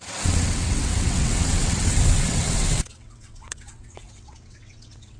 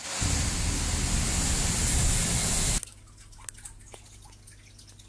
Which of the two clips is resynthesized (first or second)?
first